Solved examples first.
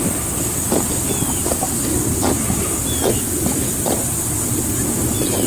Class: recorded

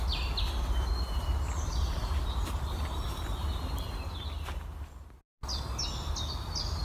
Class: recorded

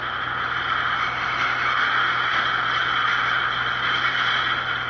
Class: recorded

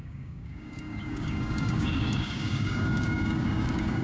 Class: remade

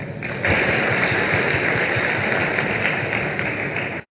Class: recorded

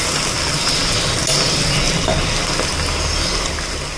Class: recorded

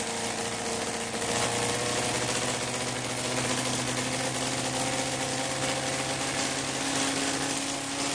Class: recorded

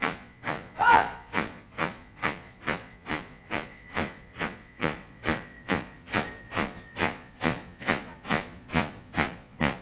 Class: remade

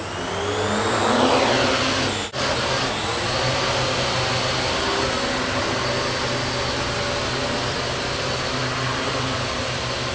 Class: recorded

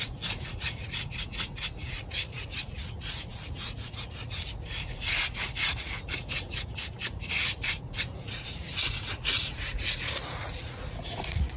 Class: remade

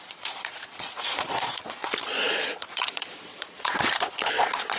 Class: remade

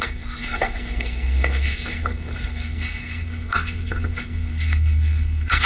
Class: remade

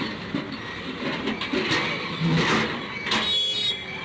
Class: recorded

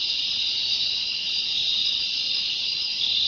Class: remade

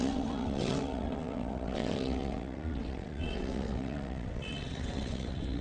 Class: remade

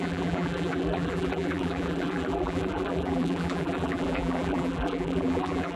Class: remade